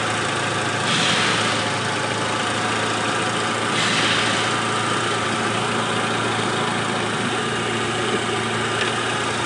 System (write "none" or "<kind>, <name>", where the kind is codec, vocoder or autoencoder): none